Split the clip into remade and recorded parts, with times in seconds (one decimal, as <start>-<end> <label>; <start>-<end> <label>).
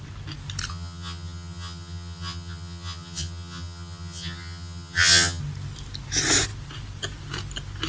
0.0-0.7 recorded; 0.7-5.4 remade; 5.4-7.9 recorded